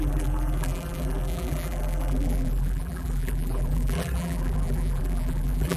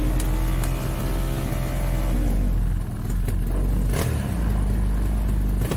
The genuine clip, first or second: second